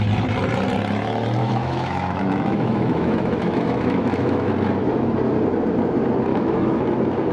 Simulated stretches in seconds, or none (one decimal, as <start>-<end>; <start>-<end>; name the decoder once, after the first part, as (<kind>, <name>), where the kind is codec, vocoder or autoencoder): 1.4-4.5 (autoencoder, DAC-VAE); 6.3-6.8